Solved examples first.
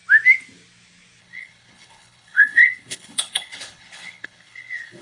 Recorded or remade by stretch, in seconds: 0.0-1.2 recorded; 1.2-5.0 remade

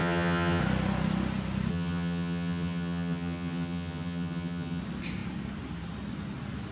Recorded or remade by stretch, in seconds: 0.0-0.6 remade; 0.6-1.7 recorded; 1.7-4.8 remade; 4.8-6.7 recorded

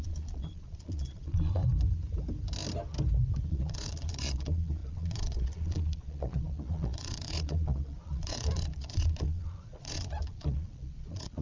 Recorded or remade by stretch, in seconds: 0.0-1.6 remade; 1.6-3.5 recorded; 3.5-11.4 remade

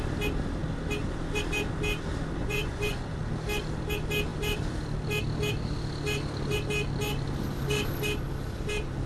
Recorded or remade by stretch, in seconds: 0.0-2.4 recorded; 2.4-3.2 remade; 3.2-9.1 recorded

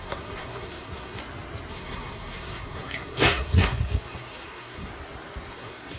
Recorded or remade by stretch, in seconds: 0.0-1.2 remade; 1.2-1.7 recorded; 1.7-4.9 remade; 4.9-5.5 recorded; 5.5-6.0 remade